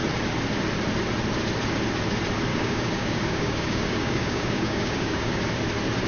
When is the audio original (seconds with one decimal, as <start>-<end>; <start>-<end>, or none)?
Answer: 0.0-2.5; 5.3-6.1